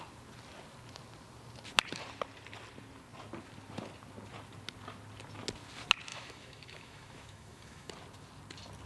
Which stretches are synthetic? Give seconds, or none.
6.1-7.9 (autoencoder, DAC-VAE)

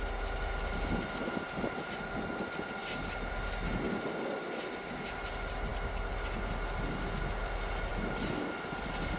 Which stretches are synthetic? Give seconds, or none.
none

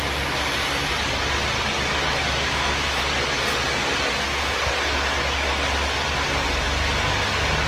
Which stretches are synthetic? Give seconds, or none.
2.2-3.0 (autoencoder, DAC-VAE)

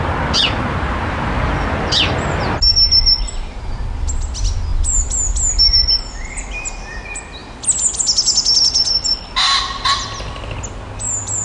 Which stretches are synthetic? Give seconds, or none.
none

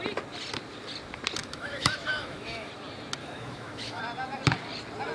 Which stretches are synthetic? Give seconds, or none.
1.4-2.7 (autoencoder, DAC-VAE); 3.2-4.0

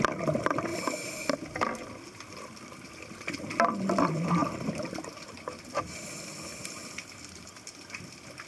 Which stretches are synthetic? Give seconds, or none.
none

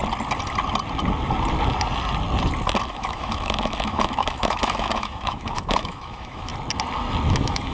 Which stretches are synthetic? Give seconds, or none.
2.9-6.5 (autoencoder, DAC-VAE); 7.3-7.7